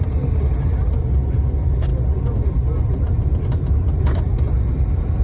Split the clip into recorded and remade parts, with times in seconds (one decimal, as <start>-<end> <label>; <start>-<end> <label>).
0.0-5.2 remade